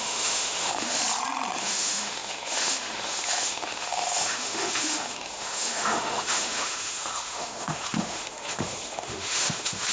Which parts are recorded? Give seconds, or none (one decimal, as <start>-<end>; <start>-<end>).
1.0-1.6